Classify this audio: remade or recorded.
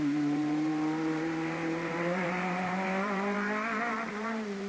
remade